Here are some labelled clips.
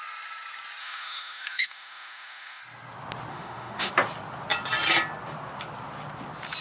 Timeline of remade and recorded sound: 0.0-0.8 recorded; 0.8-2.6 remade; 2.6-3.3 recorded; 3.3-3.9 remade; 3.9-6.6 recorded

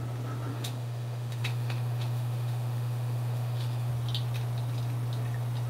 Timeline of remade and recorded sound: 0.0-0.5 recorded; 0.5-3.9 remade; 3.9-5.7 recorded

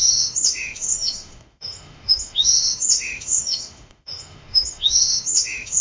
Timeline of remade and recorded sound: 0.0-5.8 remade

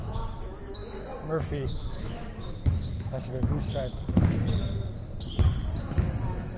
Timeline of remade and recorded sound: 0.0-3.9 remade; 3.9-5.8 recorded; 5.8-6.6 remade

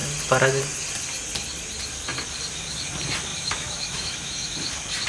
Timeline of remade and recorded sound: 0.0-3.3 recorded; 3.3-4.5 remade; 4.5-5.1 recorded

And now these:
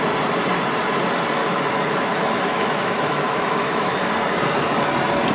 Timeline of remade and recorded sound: 0.0-1.4 recorded; 1.4-4.0 remade; 4.0-5.3 recorded

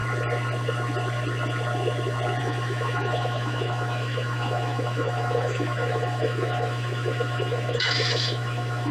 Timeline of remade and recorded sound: 0.0-2.4 recorded; 2.4-8.9 remade